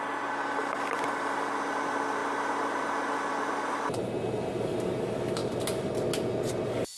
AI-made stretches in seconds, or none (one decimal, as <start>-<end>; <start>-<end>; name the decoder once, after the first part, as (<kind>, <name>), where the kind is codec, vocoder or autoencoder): none